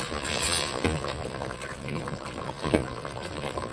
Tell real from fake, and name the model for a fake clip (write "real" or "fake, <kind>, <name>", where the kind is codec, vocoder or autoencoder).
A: fake, vocoder, Vocos